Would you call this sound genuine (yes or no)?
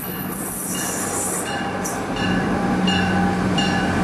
no